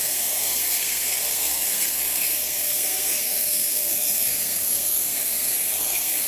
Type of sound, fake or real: fake